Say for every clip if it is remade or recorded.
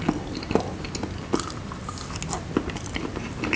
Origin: recorded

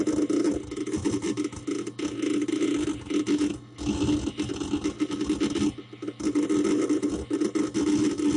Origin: recorded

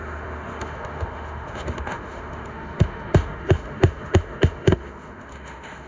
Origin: remade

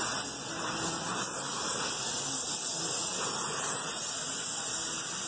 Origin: recorded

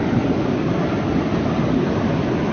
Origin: recorded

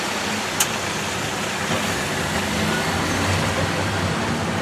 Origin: recorded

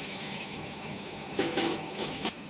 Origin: remade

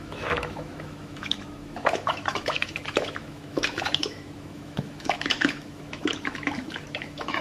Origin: remade